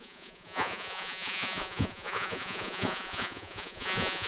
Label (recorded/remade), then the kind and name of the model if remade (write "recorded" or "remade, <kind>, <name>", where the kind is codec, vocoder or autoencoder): remade, vocoder, Vocos